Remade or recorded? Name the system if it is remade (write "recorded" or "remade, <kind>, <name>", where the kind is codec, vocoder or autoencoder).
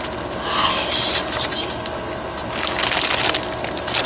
recorded